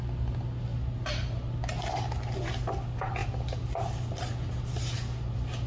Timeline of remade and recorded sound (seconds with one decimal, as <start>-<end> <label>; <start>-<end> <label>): 0.0-5.7 recorded